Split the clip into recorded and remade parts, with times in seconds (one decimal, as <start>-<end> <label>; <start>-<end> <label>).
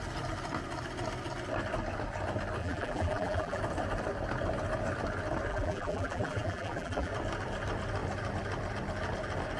0.0-2.6 recorded; 2.6-3.6 remade; 3.6-5.5 recorded; 5.5-7.1 remade; 7.1-9.6 recorded